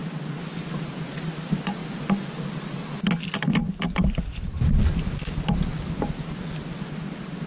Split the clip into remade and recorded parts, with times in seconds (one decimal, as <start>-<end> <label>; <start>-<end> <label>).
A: 0.0-7.5 recorded